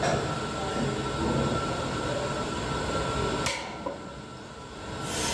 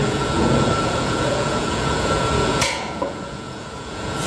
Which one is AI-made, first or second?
second